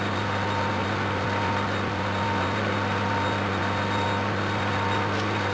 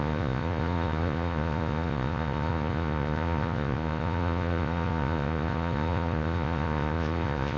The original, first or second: first